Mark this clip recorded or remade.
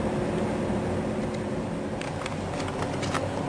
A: recorded